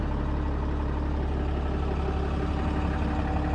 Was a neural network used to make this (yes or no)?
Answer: no